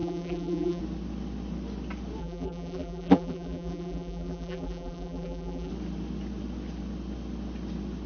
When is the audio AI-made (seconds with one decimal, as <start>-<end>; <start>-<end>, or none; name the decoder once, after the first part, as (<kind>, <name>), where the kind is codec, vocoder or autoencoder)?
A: 0.0-0.8 (vocoder, BigVGAN v2); 2.2-5.7